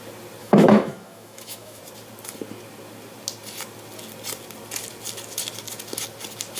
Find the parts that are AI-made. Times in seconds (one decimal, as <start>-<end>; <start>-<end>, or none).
0.4-1.8